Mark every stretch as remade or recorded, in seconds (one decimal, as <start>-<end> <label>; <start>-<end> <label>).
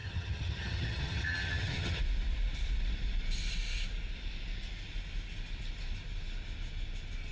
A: 0.0-2.0 remade; 2.0-7.3 recorded